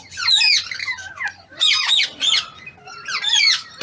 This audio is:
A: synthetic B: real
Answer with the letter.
B